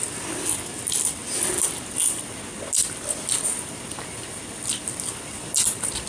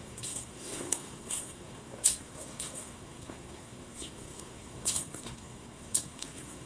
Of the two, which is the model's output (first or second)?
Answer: second